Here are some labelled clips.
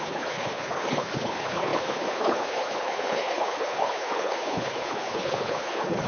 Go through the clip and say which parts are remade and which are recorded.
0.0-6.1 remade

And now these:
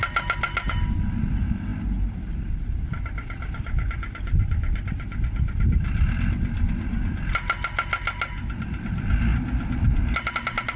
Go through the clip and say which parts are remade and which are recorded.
0.0-10.8 recorded

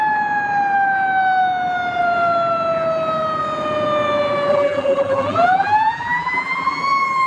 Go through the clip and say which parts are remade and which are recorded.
0.0-4.5 recorded; 4.5-6.8 remade; 6.8-7.3 recorded

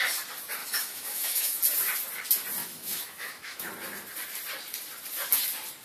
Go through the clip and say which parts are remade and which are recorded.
0.0-0.6 recorded; 0.6-1.6 remade; 1.6-2.6 recorded; 2.6-3.7 remade; 3.7-5.8 recorded

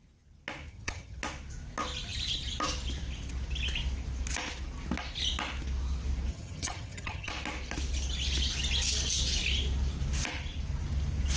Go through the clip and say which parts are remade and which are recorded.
0.0-0.7 recorded; 0.7-1.2 remade; 1.2-6.3 recorded; 6.3-7.3 remade; 7.3-11.4 recorded

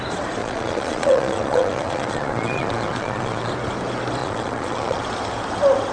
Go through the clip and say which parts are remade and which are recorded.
0.0-0.4 recorded; 0.4-3.5 remade; 3.5-4.2 recorded; 4.2-5.0 remade; 5.0-5.9 recorded